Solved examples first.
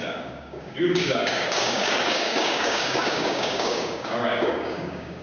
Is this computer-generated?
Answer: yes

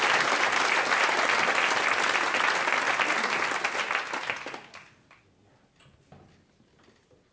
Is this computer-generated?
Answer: no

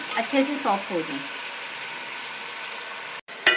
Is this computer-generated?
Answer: no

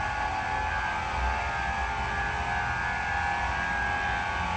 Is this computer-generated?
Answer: no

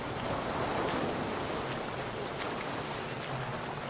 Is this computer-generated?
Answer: no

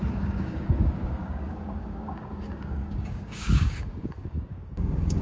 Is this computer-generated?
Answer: yes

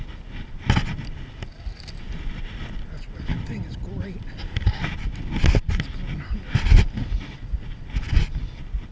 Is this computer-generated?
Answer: no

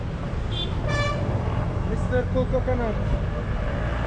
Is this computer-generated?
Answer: no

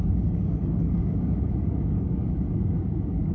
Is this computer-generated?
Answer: yes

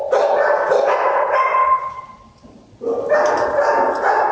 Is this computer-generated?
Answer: no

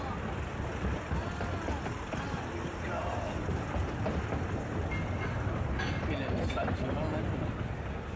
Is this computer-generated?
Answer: no